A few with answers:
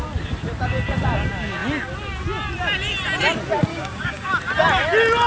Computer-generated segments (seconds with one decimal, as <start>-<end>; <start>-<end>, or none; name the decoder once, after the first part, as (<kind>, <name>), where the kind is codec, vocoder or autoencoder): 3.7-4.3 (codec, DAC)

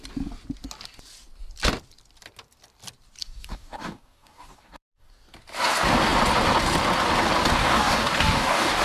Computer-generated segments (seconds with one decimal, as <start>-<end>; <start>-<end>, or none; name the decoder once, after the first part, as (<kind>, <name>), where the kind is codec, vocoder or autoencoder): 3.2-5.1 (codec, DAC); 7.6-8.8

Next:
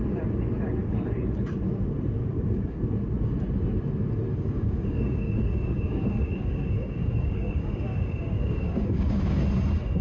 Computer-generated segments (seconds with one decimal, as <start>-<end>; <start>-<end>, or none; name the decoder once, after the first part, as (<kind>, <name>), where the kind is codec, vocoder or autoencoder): 2.2-2.8 (codec, DAC); 4.3-9.4

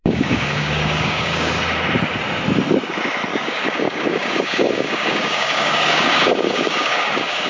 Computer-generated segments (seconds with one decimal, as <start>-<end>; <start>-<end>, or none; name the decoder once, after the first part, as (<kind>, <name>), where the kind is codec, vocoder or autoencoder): 0.0-1.5 (codec, DAC); 3.3-7.5

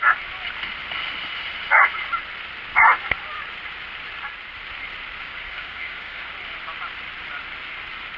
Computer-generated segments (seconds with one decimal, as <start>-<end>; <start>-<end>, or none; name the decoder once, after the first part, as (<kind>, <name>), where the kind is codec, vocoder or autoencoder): 5.2-6.3 (codec, DAC)

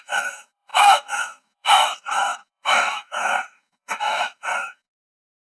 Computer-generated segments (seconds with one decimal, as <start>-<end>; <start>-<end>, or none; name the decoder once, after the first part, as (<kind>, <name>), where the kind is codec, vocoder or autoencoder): 0.0-5.5 (codec, DAC)

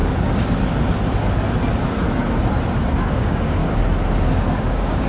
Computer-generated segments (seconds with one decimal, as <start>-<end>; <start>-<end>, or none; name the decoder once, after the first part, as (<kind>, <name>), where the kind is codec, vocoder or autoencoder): 3.1-3.6 (codec, DAC); 4.6-5.1